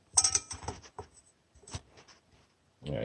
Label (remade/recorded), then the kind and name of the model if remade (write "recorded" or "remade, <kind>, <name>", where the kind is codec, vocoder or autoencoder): remade, vocoder, BigVGAN v2